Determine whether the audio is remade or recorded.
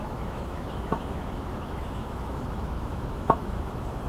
remade